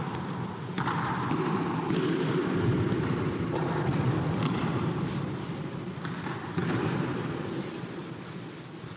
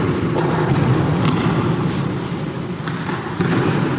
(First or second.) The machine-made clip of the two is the first